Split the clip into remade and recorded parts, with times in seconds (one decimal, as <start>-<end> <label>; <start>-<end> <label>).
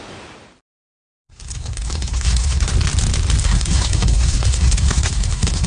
0.0-1.1 recorded; 1.1-2.7 remade; 2.7-3.4 recorded; 3.4-5.7 remade